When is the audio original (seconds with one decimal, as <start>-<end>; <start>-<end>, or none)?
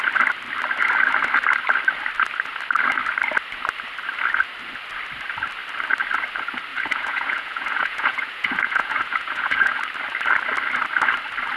0.0-6.7; 9.8-11.6